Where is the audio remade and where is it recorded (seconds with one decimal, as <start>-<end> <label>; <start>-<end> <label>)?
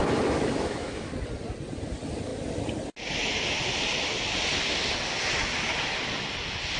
0.0-1.1 remade; 1.1-6.8 recorded